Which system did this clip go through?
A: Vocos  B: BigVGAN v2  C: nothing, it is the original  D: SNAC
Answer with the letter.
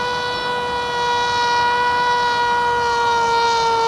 C